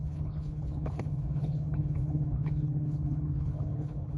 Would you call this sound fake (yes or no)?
yes